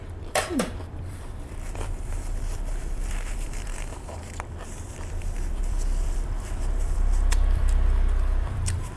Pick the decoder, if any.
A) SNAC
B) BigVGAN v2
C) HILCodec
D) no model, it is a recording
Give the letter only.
B